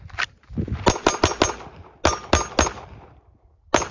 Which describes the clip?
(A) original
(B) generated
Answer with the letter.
A